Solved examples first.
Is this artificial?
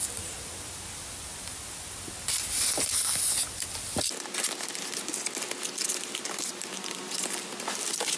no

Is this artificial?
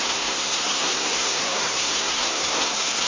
yes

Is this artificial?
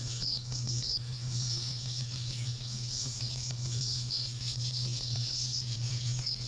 yes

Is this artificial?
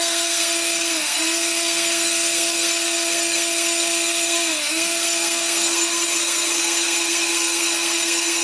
yes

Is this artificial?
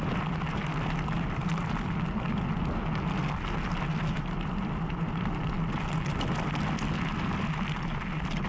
no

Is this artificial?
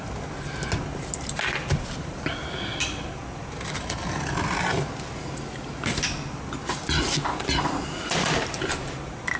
no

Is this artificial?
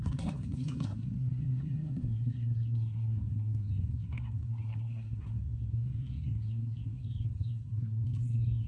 yes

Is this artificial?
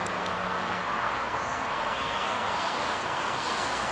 yes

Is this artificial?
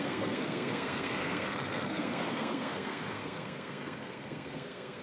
yes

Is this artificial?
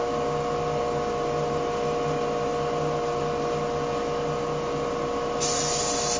no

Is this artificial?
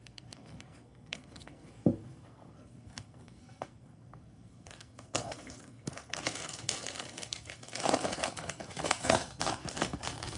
yes